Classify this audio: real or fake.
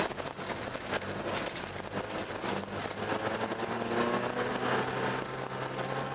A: real